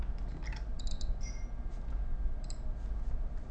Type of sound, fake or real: real